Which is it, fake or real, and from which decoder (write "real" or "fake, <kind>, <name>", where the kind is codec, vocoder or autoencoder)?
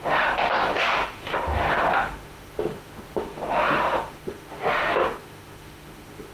fake, autoencoder, DAC-VAE